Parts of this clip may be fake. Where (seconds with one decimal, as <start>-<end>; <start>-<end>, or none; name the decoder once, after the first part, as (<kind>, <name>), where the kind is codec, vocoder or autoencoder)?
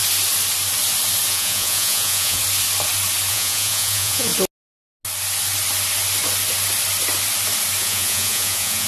1.3-2.4 (vocoder, Vocos); 3.3-4.3; 7.8-8.9